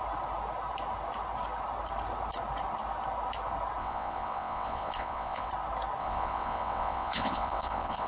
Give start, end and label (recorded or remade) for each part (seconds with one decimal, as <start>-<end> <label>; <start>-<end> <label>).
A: 0.0-3.8 recorded; 3.8-5.5 remade; 5.5-6.0 recorded; 6.0-8.1 remade